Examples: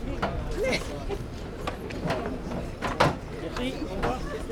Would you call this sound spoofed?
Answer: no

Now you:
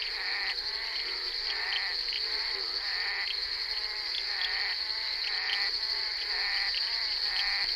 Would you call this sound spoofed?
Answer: yes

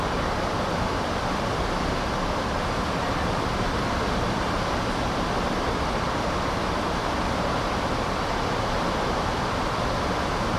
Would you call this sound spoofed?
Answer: yes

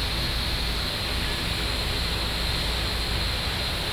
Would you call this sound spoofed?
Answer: no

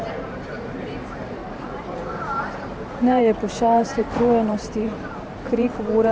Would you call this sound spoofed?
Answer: yes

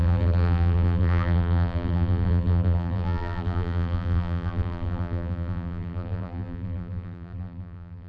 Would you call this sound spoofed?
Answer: yes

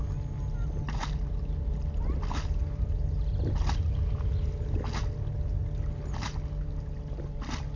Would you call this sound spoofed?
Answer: no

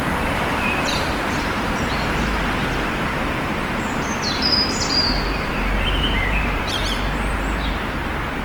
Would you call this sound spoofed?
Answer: yes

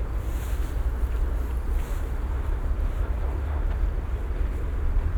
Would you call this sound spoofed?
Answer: no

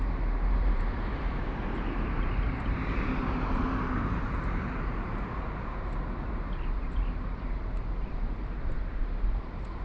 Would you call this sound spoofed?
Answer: yes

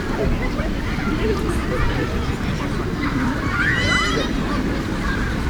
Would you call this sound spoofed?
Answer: yes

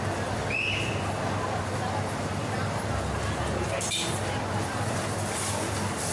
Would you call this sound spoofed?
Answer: no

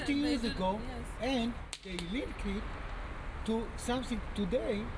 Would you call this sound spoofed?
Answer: no